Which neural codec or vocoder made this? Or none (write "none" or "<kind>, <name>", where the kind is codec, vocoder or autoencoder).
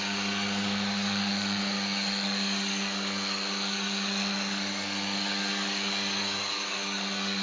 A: codec, DAC